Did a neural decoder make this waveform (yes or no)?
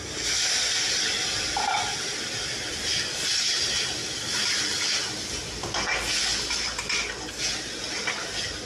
no